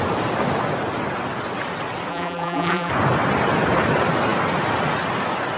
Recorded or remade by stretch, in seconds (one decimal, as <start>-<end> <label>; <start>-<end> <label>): 0.0-2.1 recorded; 2.1-2.9 remade; 2.9-5.6 recorded